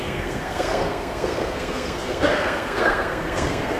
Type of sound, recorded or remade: remade